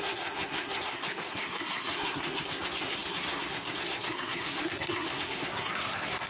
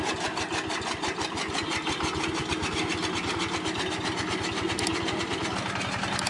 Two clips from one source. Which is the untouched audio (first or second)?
second